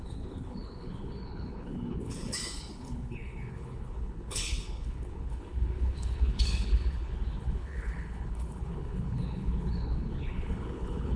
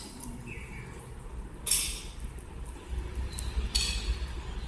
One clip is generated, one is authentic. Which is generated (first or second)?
first